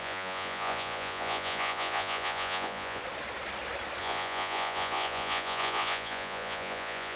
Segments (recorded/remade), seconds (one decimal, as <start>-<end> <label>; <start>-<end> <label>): 0.0-3.0 remade; 3.0-4.0 recorded; 4.0-7.2 remade